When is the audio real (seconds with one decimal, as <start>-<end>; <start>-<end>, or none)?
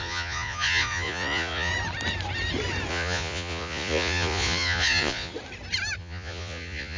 1.7-2.9; 5.3-6.0